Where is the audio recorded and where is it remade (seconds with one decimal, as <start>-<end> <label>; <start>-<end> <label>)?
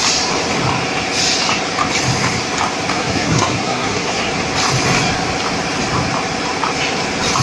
0.0-2.9 recorded; 2.9-4.3 remade; 4.3-7.4 recorded